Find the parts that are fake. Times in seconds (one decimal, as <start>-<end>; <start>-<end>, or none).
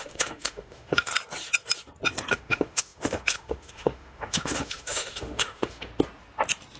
0.0-1.1; 2.3-5.9